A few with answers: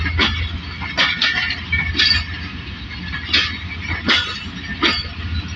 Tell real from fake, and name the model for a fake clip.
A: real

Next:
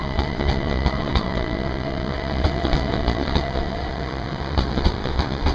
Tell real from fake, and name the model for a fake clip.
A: fake, vocoder, WaveNeXt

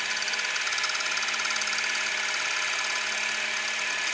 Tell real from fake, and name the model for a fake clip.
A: real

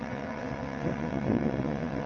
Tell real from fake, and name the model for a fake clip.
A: fake, vocoder, WaveNeXt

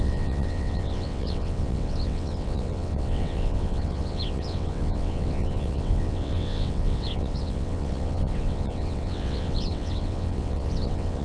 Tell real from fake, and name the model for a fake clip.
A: fake, vocoder, WaveNeXt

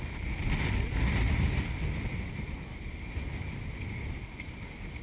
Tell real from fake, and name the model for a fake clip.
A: real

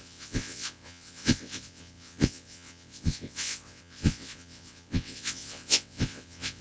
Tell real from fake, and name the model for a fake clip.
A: fake, vocoder, WaveNeXt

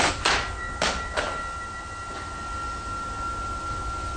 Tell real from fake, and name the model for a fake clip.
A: real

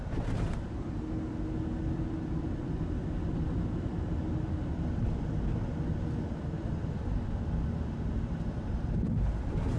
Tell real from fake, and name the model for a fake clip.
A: real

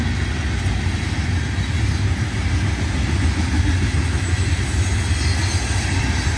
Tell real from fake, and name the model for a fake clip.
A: real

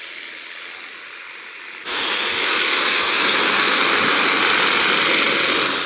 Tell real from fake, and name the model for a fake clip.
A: real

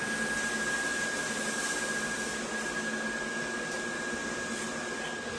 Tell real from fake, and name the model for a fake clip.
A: real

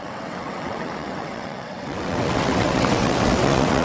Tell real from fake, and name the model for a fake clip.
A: fake, vocoder, WaveNeXt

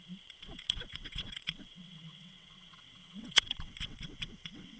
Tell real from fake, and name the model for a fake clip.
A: fake, vocoder, WaveNeXt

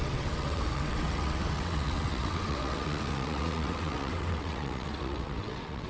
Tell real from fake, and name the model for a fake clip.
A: fake, vocoder, WaveNeXt